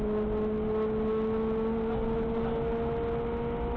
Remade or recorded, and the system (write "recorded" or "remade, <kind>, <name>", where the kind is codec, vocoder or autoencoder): recorded